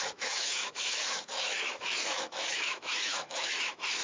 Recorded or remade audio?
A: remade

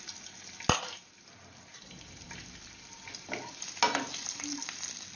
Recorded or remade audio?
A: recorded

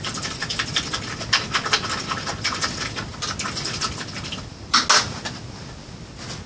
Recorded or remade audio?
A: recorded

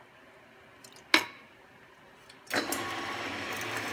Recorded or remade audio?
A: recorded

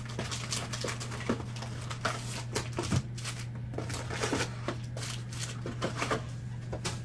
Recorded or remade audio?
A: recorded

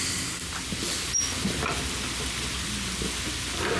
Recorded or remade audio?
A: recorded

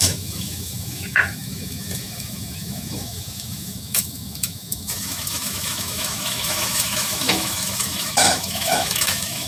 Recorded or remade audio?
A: remade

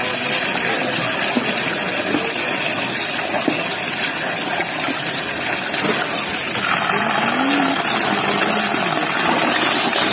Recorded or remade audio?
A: recorded